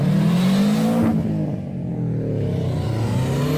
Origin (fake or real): real